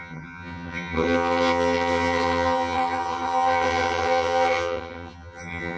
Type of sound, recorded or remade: remade